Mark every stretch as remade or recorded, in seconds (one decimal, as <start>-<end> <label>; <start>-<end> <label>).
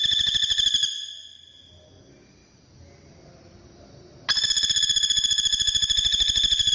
0.0-6.7 recorded